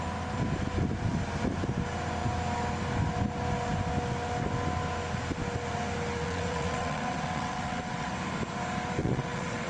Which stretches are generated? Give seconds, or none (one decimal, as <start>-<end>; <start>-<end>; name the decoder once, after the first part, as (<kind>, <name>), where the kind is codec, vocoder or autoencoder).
6.2-8.1 (vocoder, WaveNeXt); 9.0-9.7